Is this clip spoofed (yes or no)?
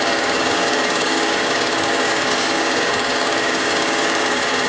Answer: yes